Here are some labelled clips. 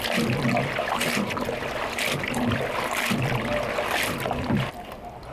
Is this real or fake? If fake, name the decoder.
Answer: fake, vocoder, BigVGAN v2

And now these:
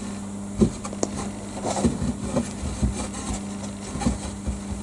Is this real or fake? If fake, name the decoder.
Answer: real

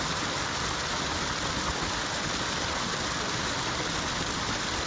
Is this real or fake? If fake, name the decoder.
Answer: real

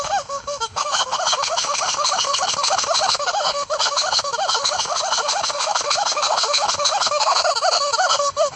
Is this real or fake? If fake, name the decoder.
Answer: fake, autoencoder, DAC-VAE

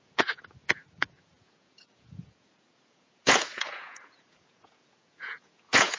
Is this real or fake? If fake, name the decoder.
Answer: fake, vocoder, Vocos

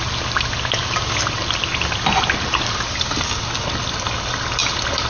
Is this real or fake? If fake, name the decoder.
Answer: real